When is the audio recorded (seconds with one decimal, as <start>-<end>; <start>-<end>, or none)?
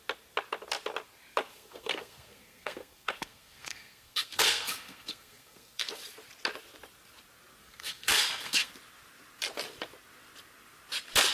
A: 0.0-1.5; 5.9-7.6; 8.7-11.3